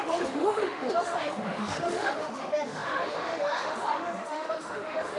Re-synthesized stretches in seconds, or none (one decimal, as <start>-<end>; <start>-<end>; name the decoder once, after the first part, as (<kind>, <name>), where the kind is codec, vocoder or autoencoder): 0.0-5.2 (autoencoder, DAC-VAE)